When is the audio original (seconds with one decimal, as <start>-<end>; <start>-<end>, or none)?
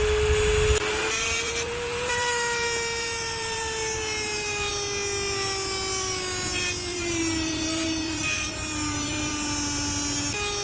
0.0-0.9; 4.7-6.9; 9.3-10.6